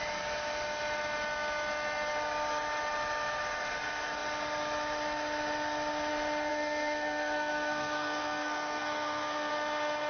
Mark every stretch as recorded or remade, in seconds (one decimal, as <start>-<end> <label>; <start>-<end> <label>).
0.0-6.5 recorded; 6.5-9.5 remade; 9.5-10.1 recorded